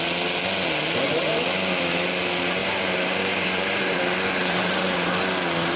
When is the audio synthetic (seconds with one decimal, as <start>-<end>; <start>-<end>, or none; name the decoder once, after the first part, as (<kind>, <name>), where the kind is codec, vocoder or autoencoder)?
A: 2.6-4.0 (vocoder, BigVGAN v2); 4.4-5.1